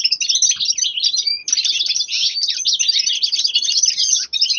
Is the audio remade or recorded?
recorded